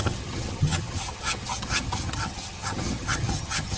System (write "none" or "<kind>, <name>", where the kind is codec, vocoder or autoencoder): vocoder, HiFi-GAN